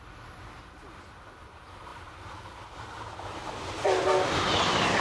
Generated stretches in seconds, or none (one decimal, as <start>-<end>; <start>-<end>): 1.9-5.0